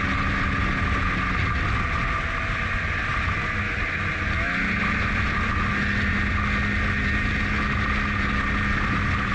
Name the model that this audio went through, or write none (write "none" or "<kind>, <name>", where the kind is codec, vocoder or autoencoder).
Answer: none